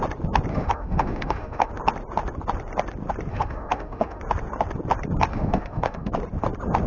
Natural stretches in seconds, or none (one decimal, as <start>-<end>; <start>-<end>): 0.0-0.5; 1.7-3.3; 4.2-5.3; 6.1-6.9